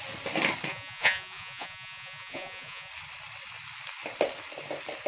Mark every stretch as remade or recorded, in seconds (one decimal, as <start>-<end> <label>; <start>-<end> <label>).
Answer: 0.0-0.7 recorded; 0.7-2.9 remade; 2.9-5.1 recorded